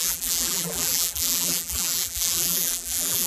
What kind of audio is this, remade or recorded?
remade